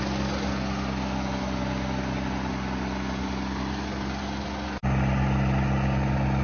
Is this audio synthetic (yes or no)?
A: no